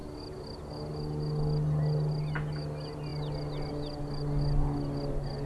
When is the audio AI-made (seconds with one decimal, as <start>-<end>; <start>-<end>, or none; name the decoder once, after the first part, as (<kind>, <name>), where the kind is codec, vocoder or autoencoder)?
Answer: none